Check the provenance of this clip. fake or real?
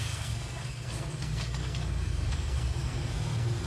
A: fake